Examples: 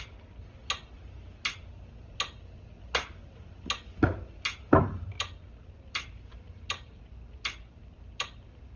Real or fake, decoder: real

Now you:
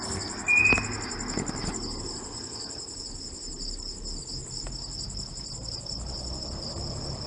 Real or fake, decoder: real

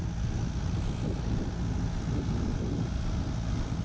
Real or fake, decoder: real